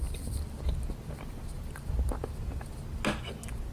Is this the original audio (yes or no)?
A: yes